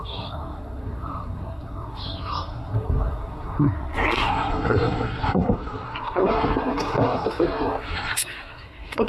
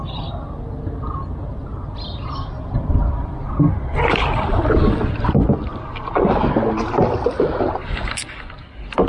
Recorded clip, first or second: second